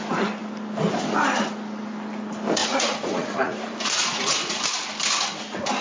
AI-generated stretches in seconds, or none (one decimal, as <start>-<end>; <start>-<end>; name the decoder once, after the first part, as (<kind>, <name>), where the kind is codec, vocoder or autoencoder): 2.6-4.6 (vocoder, Vocos)